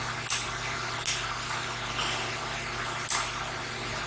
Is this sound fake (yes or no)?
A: no